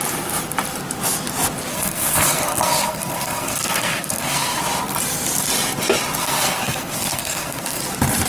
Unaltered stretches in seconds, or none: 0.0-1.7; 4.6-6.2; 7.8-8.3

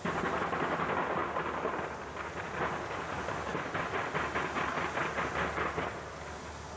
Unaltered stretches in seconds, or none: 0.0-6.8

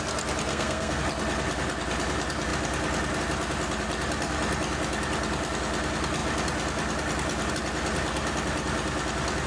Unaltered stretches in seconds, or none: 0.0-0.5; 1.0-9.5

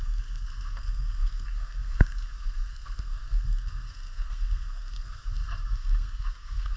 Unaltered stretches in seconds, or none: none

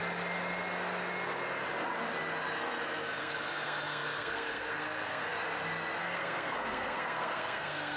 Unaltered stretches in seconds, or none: 0.0-3.2; 5.3-6.0

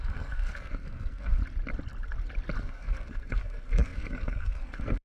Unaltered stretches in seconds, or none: 1.4-2.6

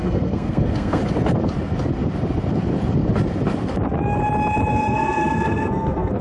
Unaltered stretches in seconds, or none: 1.0-4.7

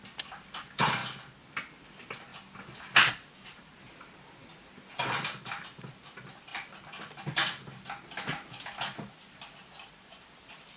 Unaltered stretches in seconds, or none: 0.0-10.8